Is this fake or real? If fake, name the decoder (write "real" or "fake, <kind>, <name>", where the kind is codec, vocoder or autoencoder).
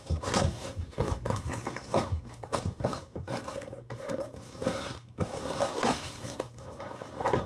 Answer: fake, codec, SNAC